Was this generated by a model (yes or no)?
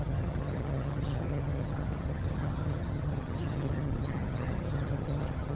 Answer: yes